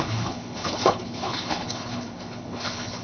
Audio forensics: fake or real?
fake